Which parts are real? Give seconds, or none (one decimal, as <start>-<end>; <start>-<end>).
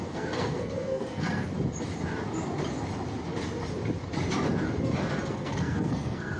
1.5-5.3